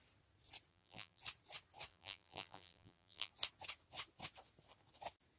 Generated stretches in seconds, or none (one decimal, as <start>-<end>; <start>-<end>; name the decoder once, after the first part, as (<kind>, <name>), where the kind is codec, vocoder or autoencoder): 0.7-1.2 (vocoder, BigVGAN v2); 1.9-3.3